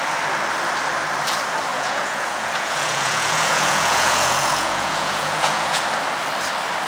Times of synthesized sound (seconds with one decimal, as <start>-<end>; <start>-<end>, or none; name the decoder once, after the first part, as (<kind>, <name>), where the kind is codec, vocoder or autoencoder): 1.7-5.8 (vocoder, Vocos)